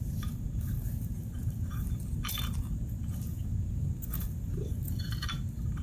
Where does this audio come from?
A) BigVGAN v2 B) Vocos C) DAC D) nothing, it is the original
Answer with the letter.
A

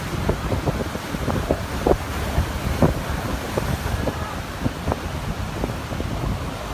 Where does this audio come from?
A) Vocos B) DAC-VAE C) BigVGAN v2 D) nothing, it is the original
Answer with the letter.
D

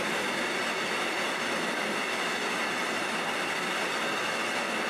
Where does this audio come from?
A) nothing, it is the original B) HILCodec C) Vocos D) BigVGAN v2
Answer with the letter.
A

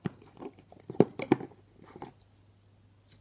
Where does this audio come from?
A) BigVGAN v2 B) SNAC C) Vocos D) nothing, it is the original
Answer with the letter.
D